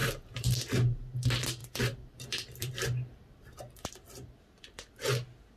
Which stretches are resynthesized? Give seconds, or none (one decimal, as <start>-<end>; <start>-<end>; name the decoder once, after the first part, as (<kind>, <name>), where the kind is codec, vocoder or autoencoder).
0.0-0.6 (vocoder, BigVGAN v2); 1.6-4.4